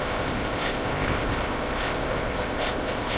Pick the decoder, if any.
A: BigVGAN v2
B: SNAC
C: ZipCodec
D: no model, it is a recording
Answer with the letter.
C